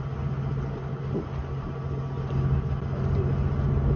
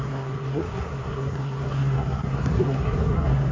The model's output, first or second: second